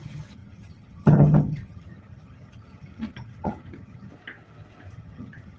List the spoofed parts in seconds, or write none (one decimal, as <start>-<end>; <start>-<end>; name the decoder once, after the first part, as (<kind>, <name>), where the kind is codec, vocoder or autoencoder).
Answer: 0.0-4.1 (vocoder, HiFi-GAN); 4.9-5.6

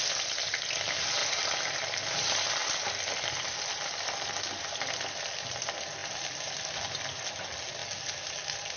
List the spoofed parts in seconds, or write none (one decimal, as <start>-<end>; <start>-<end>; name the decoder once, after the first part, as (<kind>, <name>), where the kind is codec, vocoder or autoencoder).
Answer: none

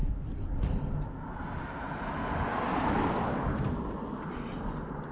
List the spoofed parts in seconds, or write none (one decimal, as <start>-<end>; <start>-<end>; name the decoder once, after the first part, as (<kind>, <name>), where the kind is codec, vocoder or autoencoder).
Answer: none

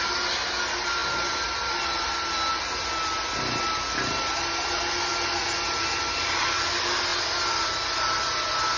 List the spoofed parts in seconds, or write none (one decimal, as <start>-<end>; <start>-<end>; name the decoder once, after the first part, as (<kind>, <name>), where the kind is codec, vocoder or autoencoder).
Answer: none

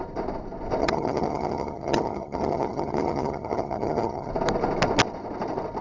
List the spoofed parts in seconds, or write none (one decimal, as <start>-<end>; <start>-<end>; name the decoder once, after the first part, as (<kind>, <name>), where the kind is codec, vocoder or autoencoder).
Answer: 0.8-4.3 (vocoder, HiFi-GAN)

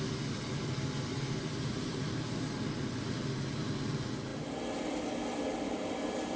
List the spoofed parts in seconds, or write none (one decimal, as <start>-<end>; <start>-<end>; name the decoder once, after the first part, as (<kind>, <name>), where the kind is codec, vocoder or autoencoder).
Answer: none

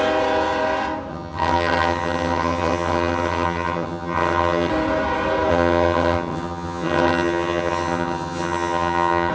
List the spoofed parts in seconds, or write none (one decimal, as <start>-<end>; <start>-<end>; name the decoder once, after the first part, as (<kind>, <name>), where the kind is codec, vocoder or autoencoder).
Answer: 1.1-4.7 (vocoder, HiFi-GAN); 5.5-9.3

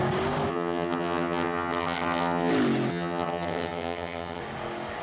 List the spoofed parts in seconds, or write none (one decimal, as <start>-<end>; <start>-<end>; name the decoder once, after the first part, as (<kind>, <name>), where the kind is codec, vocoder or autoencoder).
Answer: 0.5-2.5 (vocoder, HiFi-GAN); 2.9-4.4